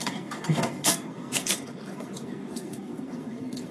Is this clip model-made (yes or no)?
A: yes